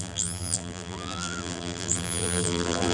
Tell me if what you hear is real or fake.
fake